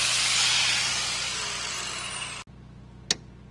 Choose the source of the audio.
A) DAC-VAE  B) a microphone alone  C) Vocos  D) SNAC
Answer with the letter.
B